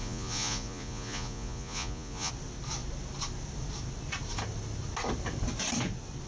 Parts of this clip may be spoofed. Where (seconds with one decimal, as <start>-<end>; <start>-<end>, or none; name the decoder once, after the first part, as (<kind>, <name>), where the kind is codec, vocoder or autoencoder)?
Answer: 0.0-2.3 (vocoder, Vocos)